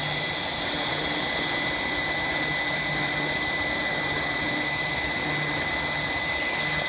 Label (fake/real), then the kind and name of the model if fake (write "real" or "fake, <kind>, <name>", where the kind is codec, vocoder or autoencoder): real